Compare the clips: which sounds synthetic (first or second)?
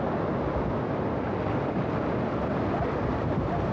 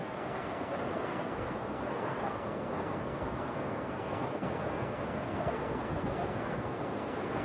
second